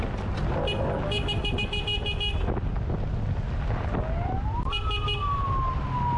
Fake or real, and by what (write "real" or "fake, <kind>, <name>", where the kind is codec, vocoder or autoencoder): real